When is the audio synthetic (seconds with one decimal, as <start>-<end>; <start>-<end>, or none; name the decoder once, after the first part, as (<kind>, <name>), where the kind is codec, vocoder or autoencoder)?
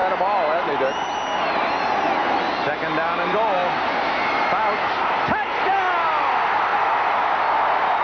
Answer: none